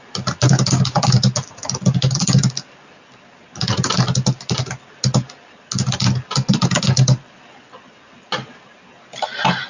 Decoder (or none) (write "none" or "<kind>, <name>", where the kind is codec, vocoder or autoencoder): none